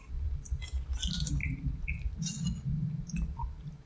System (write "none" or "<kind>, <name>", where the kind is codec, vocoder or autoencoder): none